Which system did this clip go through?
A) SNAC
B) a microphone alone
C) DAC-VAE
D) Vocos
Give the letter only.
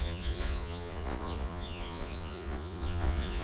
D